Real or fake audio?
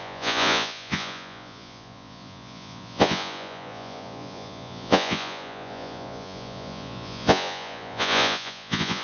fake